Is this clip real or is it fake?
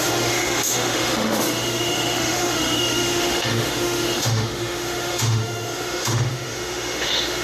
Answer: fake